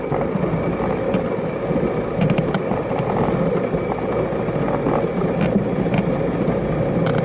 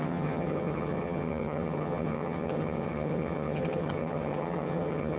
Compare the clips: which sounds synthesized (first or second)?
second